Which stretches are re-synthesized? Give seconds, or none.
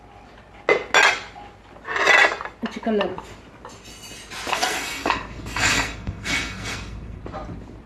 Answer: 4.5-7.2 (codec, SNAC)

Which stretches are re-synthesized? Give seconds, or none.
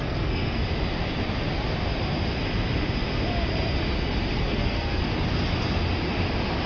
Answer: 0.0-0.6 (codec, SNAC); 4.4-5.0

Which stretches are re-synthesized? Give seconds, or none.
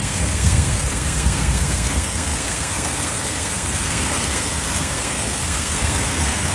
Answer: 0.0-6.5 (codec, SNAC)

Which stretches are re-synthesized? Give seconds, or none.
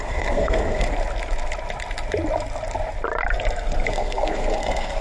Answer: 0.0-0.9 (codec, SNAC); 3.9-5.0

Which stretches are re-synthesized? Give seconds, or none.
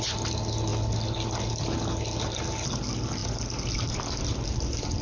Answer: none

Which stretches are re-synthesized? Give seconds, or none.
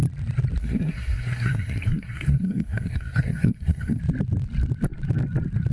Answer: 0.6-4.0 (codec, SNAC)